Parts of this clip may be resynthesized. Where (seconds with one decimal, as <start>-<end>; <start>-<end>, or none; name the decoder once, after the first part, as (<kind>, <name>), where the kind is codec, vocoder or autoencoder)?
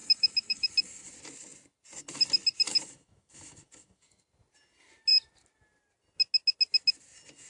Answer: 0.0-1.1 (autoencoder, DAC-VAE); 2.7-4.2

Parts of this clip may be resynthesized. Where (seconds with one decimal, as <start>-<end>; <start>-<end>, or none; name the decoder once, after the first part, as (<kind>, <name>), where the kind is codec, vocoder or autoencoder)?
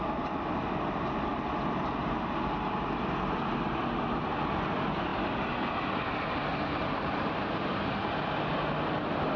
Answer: 6.5-8.0 (vocoder, BigVGAN v2)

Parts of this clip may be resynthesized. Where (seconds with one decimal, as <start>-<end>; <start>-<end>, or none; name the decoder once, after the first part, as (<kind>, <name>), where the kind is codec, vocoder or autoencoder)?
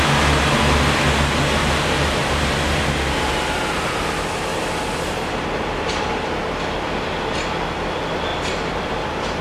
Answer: 1.6-2.8 (vocoder, BigVGAN v2); 4.5-6.4; 8.3-9.4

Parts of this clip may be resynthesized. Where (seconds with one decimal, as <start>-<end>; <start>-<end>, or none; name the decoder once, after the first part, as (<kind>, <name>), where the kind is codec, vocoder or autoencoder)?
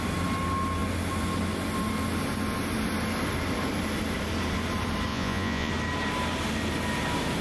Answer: 5.1-5.7 (vocoder, Vocos)